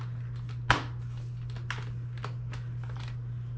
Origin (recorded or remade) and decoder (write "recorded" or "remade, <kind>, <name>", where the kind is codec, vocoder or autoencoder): recorded